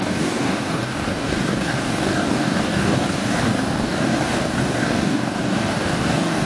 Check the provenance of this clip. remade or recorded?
remade